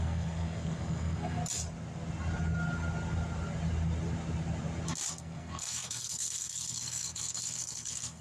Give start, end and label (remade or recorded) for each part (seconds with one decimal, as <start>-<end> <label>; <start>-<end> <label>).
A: 0.0-1.4 remade; 1.4-5.1 recorded; 5.1-8.2 remade